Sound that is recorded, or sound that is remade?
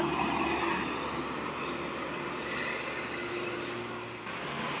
recorded